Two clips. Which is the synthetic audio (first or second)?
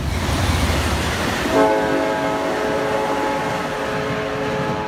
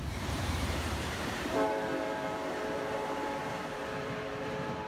second